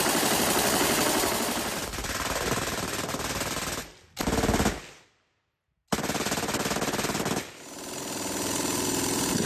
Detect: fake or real real